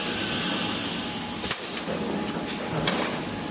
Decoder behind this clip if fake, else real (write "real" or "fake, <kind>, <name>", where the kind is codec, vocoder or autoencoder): real